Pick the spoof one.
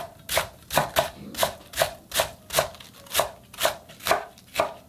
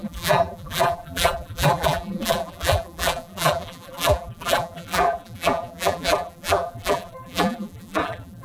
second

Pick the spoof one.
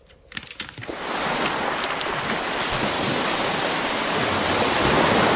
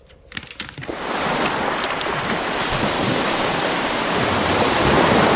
second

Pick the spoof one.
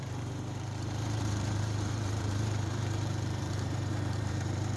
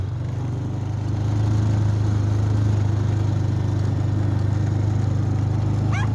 first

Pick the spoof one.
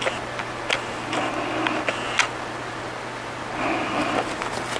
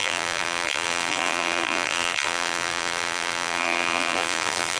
second